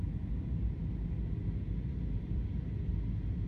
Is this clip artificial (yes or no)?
no